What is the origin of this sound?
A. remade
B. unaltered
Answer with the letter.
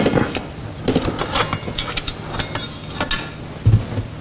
B